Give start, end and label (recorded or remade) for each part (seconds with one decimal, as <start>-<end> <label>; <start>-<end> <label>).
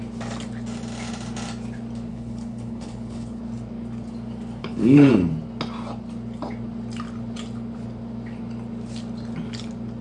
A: 0.0-2.1 recorded; 2.1-3.4 remade; 3.4-4.6 recorded; 4.6-5.1 remade; 5.1-10.0 recorded